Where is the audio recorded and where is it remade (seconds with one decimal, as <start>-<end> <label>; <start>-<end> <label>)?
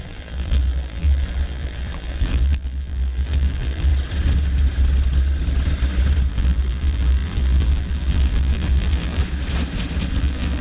0.0-3.9 remade; 3.9-6.3 recorded; 6.3-9.2 remade; 9.2-10.2 recorded; 10.2-10.6 remade